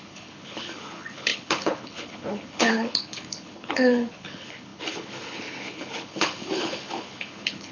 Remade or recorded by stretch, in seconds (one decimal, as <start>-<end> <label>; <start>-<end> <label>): 0.0-7.7 remade